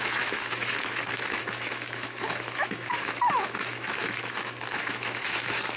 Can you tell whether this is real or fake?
fake